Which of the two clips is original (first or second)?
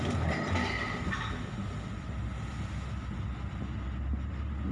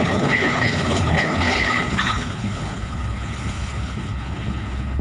first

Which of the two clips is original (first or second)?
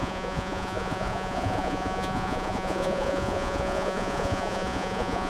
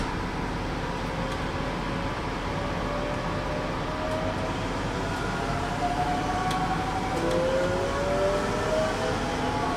second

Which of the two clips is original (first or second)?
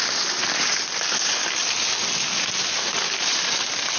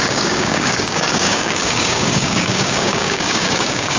first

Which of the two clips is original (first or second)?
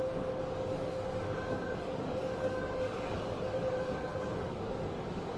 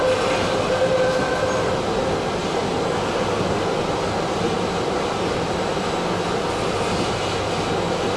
second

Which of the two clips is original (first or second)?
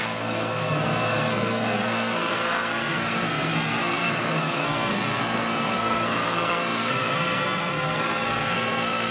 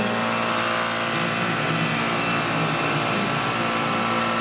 second